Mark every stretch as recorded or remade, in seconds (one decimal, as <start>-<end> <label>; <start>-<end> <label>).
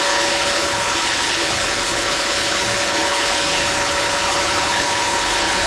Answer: 0.0-5.7 remade